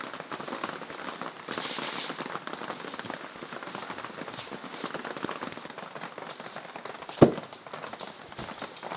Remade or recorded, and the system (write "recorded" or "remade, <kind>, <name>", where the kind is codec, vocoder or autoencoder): recorded